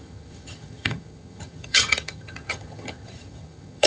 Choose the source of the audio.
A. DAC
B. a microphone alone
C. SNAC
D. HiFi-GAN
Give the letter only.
D